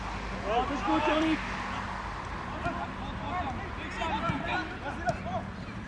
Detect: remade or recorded recorded